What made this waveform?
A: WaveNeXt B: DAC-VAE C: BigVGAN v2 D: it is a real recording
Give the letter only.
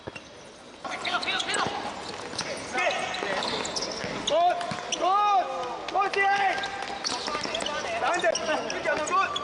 D